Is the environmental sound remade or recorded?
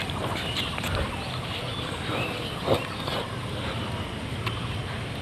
recorded